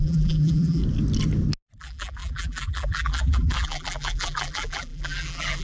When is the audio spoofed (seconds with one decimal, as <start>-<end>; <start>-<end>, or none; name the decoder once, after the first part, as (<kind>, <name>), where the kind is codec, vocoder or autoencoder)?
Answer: 0.0-0.8 (vocoder, BigVGAN v2); 1.8-5.6